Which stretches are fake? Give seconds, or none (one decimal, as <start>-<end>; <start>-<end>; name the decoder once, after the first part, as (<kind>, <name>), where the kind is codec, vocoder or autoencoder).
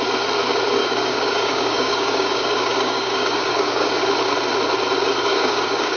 0.8-4.0 (codec, DAC); 5.3-6.0